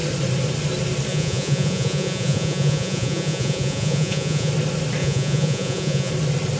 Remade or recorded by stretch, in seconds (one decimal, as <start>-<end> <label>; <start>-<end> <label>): 0.0-1.1 recorded; 1.1-4.5 remade; 4.5-5.0 recorded; 5.0-6.1 remade; 6.1-6.6 recorded